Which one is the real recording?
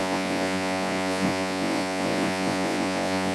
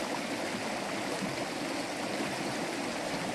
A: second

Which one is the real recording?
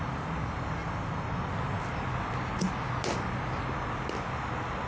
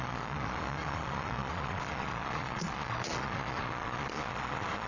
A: first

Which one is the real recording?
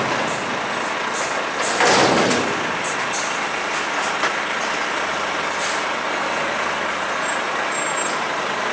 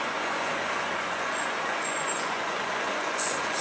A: first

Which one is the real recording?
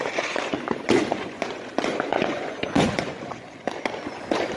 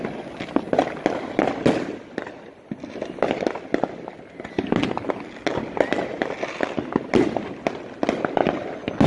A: second